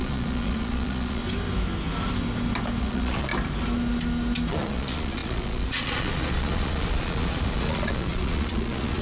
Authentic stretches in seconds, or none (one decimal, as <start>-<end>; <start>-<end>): 1.2-2.8; 3.3-4.5